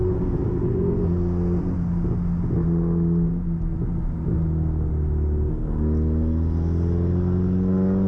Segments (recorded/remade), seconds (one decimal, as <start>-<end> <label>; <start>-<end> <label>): 0.0-8.1 recorded